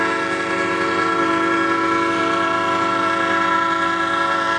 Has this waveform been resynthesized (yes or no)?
yes